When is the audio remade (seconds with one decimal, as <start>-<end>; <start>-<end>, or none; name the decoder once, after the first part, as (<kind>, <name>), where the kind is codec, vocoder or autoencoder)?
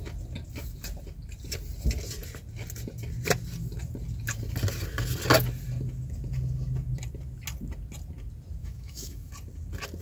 8.6-9.3 (autoencoder, DAC-VAE)